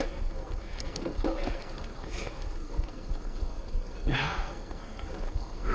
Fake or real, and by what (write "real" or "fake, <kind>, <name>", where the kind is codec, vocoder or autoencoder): fake, codec, SNAC